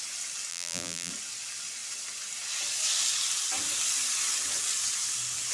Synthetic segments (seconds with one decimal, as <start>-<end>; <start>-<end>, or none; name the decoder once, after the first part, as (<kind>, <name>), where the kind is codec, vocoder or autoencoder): 0.5-1.1 (vocoder, BigVGAN v2)